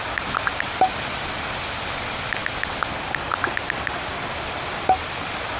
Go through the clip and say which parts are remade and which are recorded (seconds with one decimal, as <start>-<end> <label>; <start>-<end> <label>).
0.0-5.6 recorded